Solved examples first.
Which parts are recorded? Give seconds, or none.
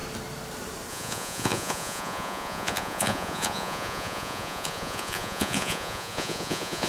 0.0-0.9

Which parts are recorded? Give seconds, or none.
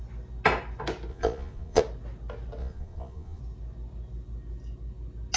0.0-1.1; 1.8-2.6; 3.4-5.4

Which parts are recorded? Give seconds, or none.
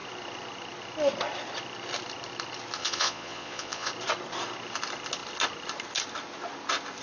0.0-2.8; 3.9-7.0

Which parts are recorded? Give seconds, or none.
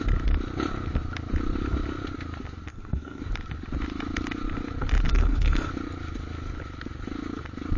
0.0-2.7; 3.2-5.1; 5.7-7.8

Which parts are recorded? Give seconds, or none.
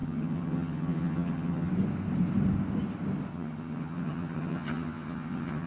1.7-3.3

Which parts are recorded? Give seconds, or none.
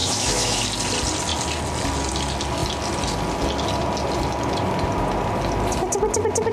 0.6-6.5